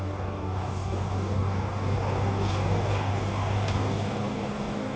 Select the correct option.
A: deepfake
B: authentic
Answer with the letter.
A